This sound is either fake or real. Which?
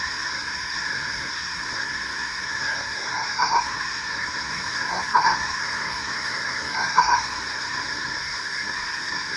fake